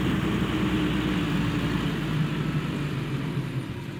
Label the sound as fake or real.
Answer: real